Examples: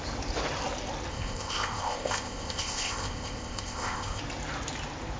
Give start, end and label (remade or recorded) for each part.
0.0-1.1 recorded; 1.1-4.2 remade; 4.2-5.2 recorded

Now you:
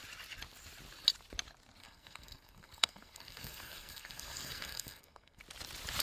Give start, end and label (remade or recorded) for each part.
0.0-1.8 recorded; 1.8-5.4 remade; 5.4-6.0 recorded

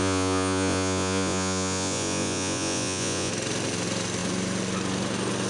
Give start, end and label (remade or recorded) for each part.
0.0-3.3 remade; 3.3-5.5 recorded

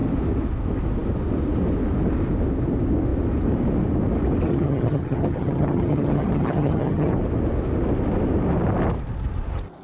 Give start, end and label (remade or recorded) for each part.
0.0-4.5 recorded; 4.5-7.1 remade; 7.1-9.8 recorded